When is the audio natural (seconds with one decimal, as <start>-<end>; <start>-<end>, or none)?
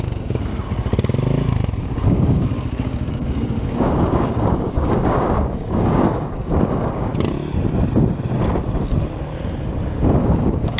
0.5-1.8; 7.1-10.2